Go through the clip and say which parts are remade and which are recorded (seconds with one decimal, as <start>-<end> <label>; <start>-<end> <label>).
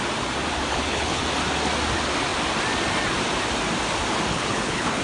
0.0-0.7 recorded; 0.7-1.2 remade; 1.2-4.3 recorded; 4.3-5.0 remade